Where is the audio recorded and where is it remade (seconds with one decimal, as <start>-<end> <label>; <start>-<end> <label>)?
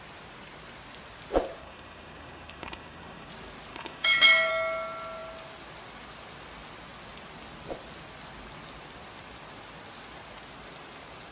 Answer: 0.0-1.6 recorded; 1.6-3.3 remade; 3.3-3.7 recorded; 3.7-4.5 remade; 4.5-11.3 recorded